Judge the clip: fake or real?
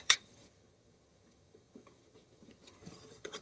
fake